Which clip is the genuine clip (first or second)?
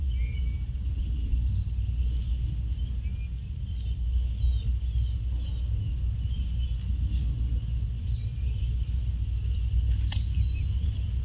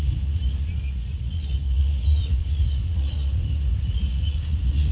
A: first